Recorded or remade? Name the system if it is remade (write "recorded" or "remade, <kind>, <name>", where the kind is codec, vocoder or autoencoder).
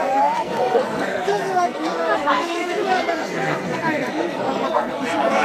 remade, codec, SNAC